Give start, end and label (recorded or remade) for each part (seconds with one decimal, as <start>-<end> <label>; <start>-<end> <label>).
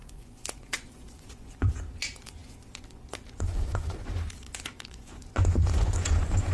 0.0-6.5 remade